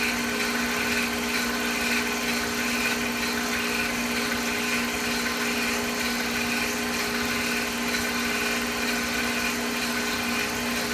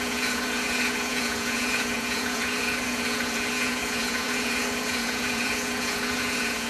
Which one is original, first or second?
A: first